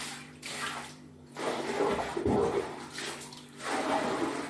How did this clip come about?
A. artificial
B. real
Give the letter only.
A